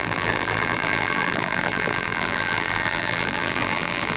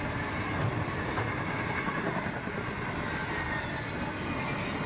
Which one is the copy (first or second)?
first